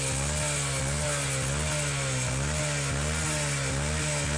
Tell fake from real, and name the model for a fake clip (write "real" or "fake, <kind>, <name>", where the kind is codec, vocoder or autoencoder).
real